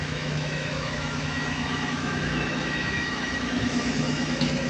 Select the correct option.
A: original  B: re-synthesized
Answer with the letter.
B